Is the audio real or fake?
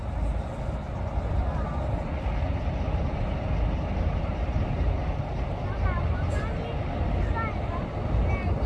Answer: real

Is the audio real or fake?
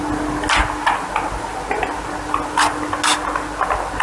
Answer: real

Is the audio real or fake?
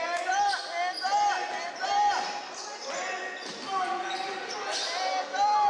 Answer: real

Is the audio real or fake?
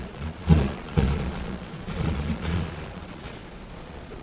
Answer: fake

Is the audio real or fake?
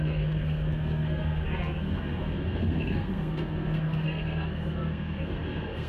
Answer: fake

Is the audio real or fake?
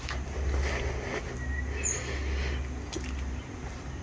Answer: real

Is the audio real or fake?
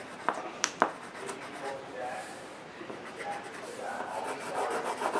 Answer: fake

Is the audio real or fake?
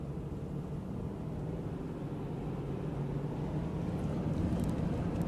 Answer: real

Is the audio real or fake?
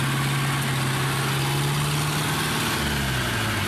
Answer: real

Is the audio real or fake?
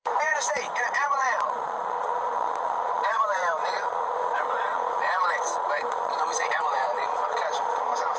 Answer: fake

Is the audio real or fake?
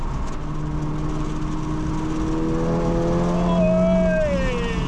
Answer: real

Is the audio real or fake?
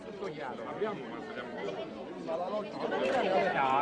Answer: real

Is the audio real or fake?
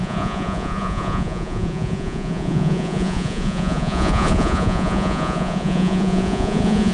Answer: fake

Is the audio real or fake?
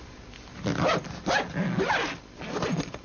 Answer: real